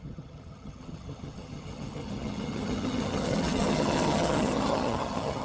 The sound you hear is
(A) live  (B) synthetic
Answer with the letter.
B